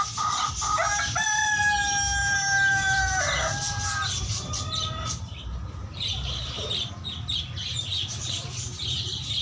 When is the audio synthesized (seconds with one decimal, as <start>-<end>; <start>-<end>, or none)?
2.2-6.9; 8.2-9.4